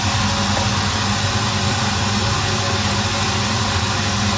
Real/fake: real